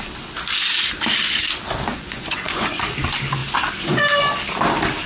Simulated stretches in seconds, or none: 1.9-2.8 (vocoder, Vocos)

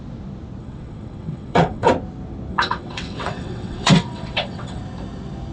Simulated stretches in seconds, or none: 0.6-1.9 (vocoder, WaveNeXt); 2.5-4.8

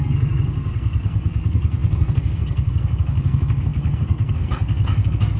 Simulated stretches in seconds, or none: 0.0-5.4 (codec, SNAC)

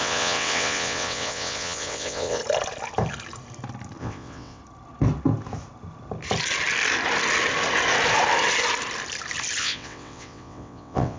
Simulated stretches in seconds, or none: 0.0-2.4 (vocoder, WaveNeXt); 4.0-4.6; 9.6-11.2

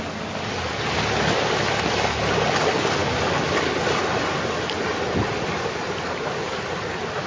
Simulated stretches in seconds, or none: none

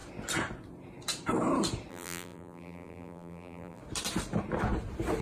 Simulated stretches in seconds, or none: 1.9-3.8 (vocoder, BigVGAN v2)

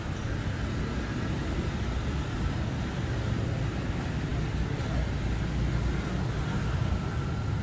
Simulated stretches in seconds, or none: none